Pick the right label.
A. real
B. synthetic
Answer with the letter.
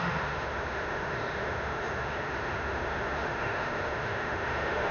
B